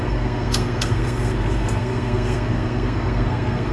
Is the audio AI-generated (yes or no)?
yes